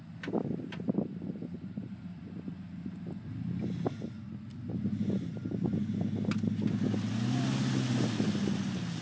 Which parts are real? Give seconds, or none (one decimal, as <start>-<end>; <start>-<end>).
0.0-1.1; 2.2-9.0